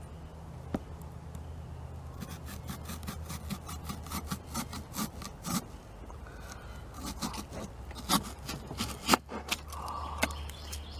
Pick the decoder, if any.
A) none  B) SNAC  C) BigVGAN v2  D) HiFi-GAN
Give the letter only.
A